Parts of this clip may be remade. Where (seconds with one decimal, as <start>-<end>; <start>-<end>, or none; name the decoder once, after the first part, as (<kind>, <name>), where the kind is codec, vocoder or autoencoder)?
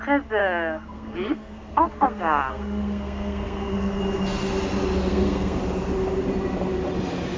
0.4-4.0 (codec, SNAC); 5.1-5.6